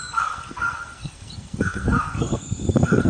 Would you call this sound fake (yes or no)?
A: yes